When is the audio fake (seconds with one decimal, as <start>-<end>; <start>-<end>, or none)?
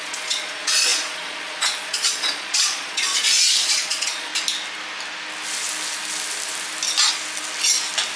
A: 0.0-4.3